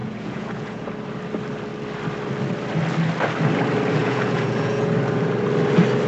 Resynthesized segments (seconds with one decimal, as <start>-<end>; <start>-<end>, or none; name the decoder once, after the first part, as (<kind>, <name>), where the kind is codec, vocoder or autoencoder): 0.0-0.9 (vocoder, Vocos); 4.0-4.9

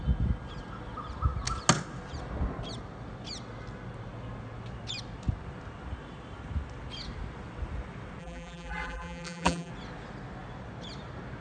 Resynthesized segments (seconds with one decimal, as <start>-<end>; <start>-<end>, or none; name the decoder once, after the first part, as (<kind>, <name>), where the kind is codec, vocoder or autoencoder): 8.2-9.7 (vocoder, BigVGAN v2)

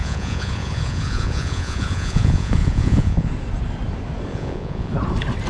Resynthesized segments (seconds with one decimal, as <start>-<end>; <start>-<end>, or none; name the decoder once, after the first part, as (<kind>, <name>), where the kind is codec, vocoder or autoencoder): 0.0-3.3 (vocoder, Vocos); 4.3-4.9

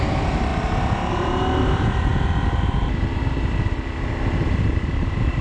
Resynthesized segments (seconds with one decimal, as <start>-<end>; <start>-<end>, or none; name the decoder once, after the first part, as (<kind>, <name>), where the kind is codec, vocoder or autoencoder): 0.0-0.5 (vocoder, BigVGAN v2); 1.1-2.1; 5.0-5.4

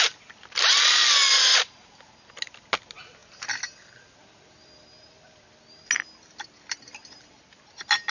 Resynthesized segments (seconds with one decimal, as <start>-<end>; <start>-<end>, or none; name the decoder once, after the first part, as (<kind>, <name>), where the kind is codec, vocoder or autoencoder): none